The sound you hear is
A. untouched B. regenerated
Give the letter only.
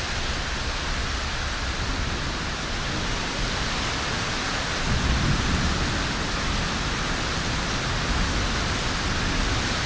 A